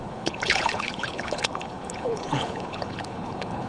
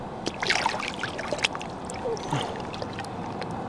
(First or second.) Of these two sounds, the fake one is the first